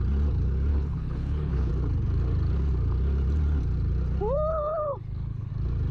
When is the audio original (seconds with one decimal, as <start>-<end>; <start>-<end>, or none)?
0.0-0.7; 1.7-4.5; 5.5-5.9